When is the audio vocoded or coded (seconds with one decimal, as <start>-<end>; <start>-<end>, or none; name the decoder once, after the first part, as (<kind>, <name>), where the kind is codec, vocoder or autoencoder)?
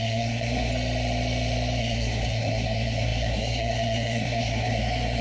0.0-0.7 (codec, SNAC); 1.8-5.2